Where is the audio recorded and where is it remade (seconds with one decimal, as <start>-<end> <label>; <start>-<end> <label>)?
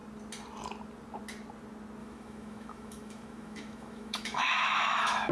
0.0-2.0 recorded; 2.0-5.3 remade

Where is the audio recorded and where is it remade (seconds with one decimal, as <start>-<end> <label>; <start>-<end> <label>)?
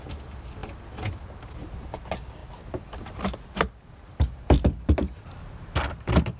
0.0-2.4 recorded; 2.4-5.2 remade; 5.2-6.4 recorded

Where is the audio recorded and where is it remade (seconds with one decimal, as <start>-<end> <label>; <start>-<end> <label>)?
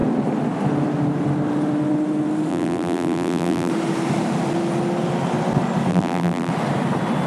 0.0-2.5 recorded; 2.5-3.7 remade; 3.7-5.9 recorded; 5.9-6.5 remade; 6.5-7.3 recorded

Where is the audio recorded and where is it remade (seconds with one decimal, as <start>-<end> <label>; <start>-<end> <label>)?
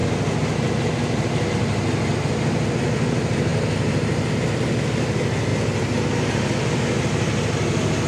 0.0-8.1 recorded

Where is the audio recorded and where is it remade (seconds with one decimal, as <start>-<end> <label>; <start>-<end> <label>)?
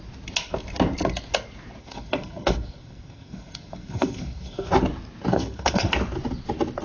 0.0-1.8 recorded; 1.8-4.7 remade; 4.7-5.3 recorded; 5.3-5.9 remade; 5.9-6.8 recorded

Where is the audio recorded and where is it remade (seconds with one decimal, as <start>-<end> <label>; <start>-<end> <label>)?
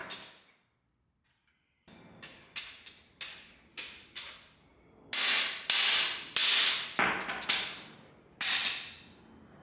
0.0-9.6 recorded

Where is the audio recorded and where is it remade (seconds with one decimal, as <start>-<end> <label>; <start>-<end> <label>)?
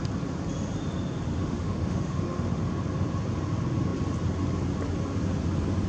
0.0-1.3 recorded; 1.3-2.6 remade; 2.6-5.9 recorded